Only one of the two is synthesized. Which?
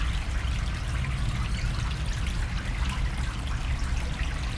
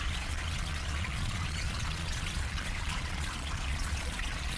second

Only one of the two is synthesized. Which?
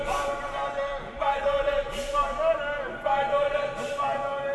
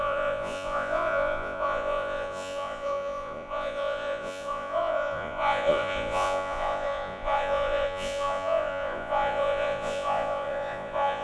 second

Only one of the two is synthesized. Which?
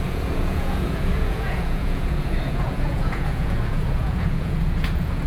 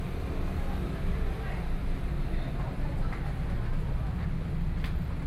first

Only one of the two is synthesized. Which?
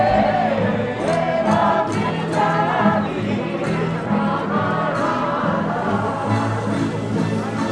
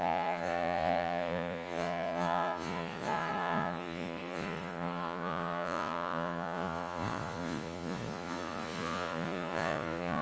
second